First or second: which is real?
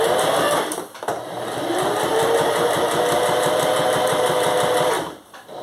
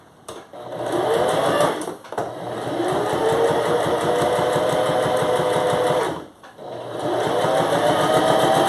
second